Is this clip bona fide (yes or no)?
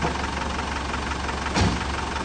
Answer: yes